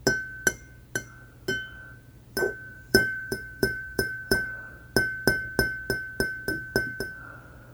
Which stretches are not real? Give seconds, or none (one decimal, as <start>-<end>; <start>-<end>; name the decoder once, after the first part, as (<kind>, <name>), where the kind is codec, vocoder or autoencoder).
2.7-4.8 (vocoder, BigVGAN v2)